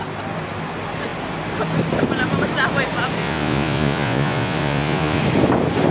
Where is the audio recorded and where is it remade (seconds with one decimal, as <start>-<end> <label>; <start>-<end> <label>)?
0.0-3.2 recorded; 3.2-5.2 remade; 5.2-5.9 recorded